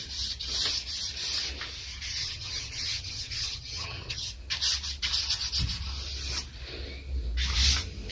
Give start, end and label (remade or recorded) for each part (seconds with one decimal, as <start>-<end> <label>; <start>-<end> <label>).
0.0-2.2 recorded; 2.2-4.3 remade; 4.3-8.1 recorded